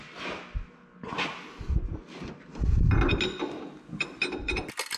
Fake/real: real